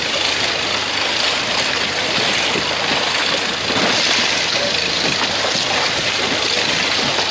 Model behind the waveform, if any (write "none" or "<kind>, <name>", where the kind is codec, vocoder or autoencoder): none